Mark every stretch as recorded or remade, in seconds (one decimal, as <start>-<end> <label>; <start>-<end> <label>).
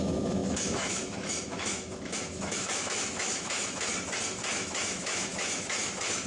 0.0-3.9 remade; 3.9-4.5 recorded; 4.5-6.3 remade